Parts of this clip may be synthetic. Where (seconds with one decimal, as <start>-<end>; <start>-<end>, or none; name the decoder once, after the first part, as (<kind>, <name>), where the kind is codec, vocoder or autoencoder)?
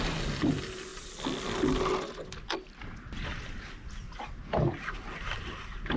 none